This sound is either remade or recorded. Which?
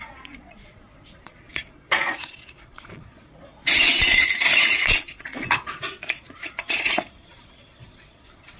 remade